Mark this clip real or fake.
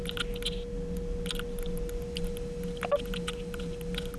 real